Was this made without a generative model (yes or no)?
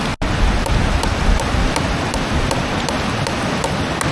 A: yes